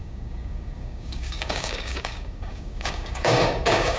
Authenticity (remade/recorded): remade